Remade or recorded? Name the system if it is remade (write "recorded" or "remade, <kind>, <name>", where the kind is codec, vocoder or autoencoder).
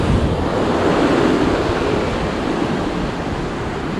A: remade, vocoder, BigVGAN v2